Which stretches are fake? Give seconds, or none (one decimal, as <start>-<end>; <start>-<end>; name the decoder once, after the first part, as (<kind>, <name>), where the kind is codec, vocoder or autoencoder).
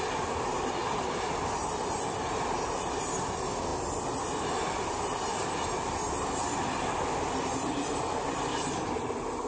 none